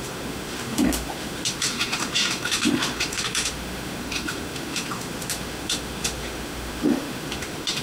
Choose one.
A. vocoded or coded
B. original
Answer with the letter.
A